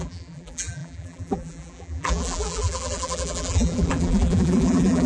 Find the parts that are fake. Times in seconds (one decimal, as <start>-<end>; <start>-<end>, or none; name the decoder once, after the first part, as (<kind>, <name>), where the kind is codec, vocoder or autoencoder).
0.0-5.1 (vocoder, BigVGAN v2)